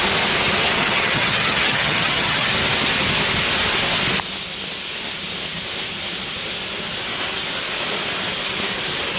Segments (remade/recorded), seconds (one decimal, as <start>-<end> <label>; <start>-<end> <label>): 0.0-0.8 recorded; 0.8-2.5 remade; 2.5-9.2 recorded